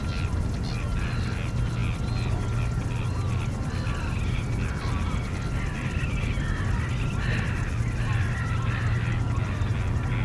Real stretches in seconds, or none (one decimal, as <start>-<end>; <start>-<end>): 0.0-10.2